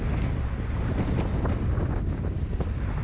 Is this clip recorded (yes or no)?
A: yes